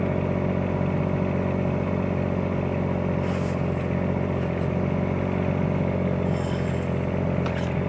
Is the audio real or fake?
real